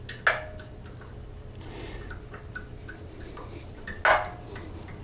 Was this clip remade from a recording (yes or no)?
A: no